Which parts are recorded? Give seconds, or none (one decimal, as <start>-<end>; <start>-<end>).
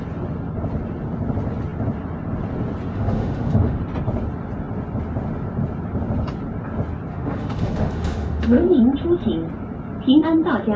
0.0-2.9; 3.8-7.1; 8.8-10.8